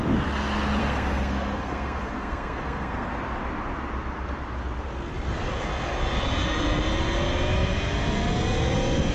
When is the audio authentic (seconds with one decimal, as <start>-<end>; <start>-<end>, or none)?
0.0-0.8; 3.1-9.1